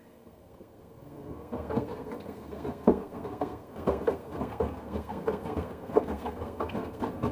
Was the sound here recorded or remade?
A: remade